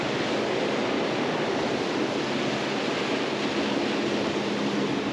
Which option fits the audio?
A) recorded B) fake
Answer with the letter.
A